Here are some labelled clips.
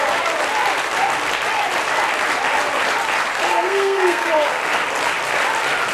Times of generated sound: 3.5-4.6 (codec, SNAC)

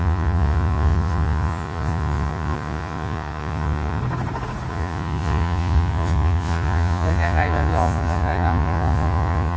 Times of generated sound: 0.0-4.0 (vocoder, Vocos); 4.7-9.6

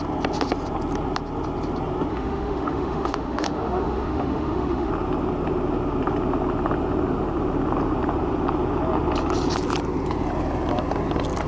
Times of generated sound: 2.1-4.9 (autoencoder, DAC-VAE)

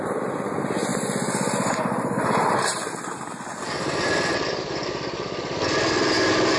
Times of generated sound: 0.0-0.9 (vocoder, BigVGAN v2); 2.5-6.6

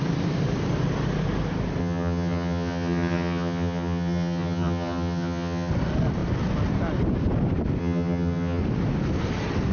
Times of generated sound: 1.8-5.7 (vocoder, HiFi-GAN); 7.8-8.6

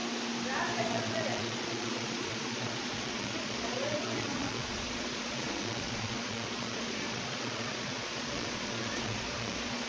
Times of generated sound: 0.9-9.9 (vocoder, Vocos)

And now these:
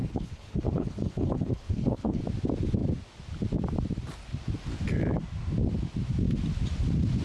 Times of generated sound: 0.0-2.2 (codec, HILCodec)

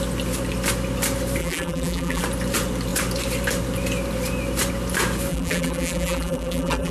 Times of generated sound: 1.4-2.2 (vocoder, BigVGAN v2); 5.3-6.9